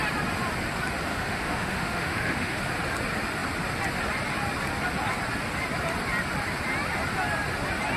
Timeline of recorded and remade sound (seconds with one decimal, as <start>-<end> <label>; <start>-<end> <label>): 0.0-1.1 recorded; 1.1-2.6 remade; 2.6-8.0 recorded